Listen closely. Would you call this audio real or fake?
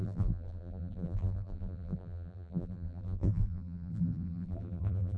fake